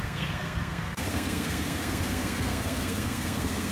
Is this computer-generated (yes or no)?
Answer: yes